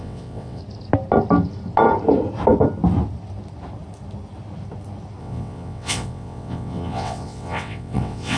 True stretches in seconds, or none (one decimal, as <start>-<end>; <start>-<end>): 0.6-5.2